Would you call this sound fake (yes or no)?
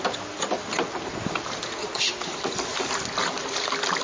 no